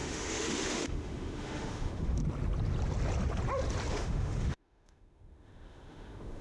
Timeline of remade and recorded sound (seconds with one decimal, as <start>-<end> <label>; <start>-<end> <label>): 0.0-2.2 remade; 2.2-3.9 recorded; 3.9-6.4 remade